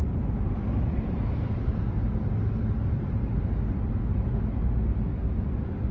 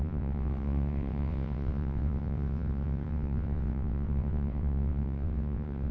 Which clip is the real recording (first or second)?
first